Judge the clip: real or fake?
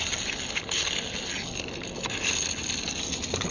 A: real